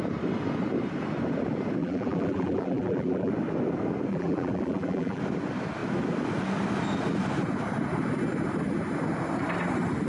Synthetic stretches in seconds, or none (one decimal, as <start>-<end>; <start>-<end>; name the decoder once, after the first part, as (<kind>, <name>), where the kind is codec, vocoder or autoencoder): 1.8-3.3 (vocoder, BigVGAN v2); 4.1-5.2